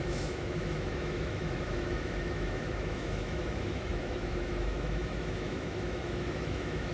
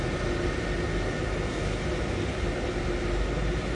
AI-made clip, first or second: first